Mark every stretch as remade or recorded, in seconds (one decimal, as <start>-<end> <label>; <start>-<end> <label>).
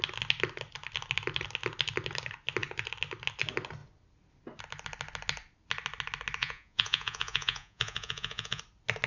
0.0-6.4 recorded; 6.4-8.6 remade; 8.6-9.1 recorded